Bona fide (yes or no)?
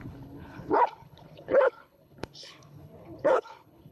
no